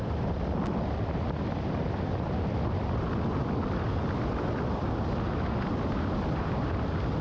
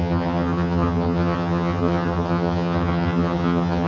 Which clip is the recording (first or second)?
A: first